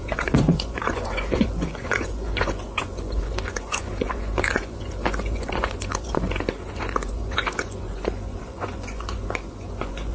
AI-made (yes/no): yes